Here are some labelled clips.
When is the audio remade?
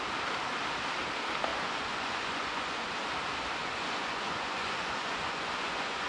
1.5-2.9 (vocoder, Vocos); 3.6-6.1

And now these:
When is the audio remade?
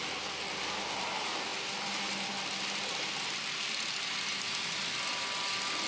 none